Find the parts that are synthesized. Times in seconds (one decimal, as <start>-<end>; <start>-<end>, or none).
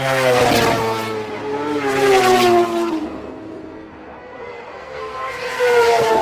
0.0-0.4; 3.0-6.2